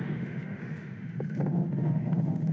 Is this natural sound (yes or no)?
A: no